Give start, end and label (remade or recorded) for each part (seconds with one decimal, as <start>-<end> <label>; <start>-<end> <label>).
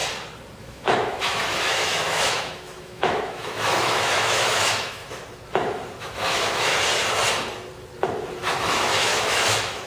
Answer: 0.0-0.6 recorded; 0.6-5.0 remade; 5.0-6.0 recorded; 6.0-6.7 remade; 6.7-8.4 recorded; 8.4-9.9 remade